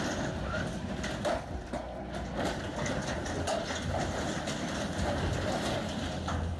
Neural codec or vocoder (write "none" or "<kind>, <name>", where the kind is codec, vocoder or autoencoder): none